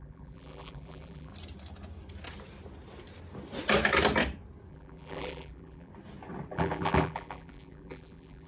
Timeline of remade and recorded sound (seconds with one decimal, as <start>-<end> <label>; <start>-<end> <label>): 0.0-1.3 remade; 1.3-4.7 recorded; 4.7-5.9 remade; 5.9-6.5 recorded; 6.5-8.5 remade